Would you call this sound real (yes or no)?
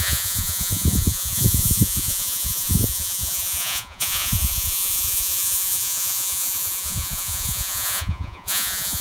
no